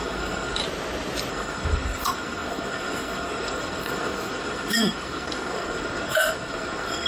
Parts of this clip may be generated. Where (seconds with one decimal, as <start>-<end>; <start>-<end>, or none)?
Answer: 0.0-0.6; 1.3-7.1